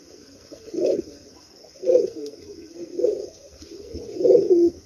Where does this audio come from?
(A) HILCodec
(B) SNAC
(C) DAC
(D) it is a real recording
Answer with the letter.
B